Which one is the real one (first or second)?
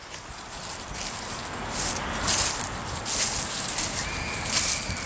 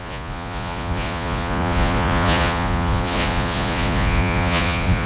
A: first